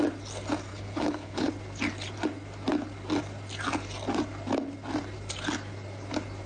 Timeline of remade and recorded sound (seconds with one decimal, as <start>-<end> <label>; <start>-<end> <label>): 0.0-0.7 recorded; 0.7-1.5 remade; 1.5-6.5 recorded